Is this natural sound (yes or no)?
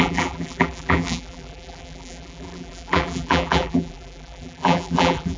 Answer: no